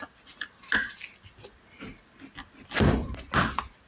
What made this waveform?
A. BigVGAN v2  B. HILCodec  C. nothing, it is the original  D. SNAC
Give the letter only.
C